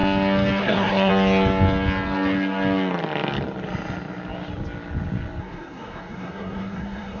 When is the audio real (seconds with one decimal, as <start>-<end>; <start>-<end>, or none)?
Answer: 0.0-0.6; 1.1-5.4